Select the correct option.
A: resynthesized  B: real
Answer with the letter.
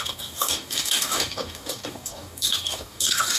A